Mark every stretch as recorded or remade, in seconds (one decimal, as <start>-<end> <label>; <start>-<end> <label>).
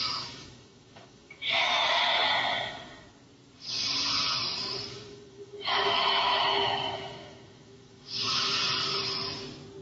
0.0-2.1 remade; 2.1-4.9 recorded; 4.9-8.6 remade; 8.6-9.8 recorded